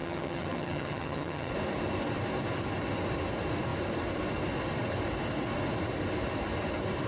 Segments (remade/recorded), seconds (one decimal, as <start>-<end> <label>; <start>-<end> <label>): 0.0-1.5 remade; 1.5-7.1 recorded